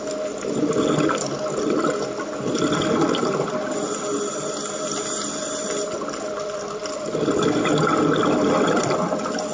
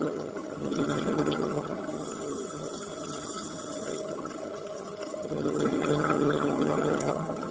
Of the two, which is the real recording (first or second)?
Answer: first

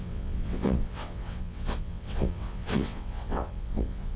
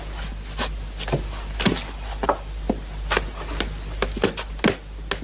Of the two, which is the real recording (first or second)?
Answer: second